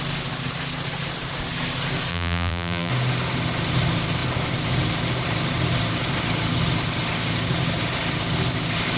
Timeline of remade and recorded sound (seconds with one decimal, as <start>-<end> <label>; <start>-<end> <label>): 0.0-2.1 recorded; 2.1-2.9 remade; 2.9-9.0 recorded